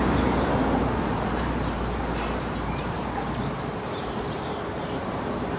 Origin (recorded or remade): remade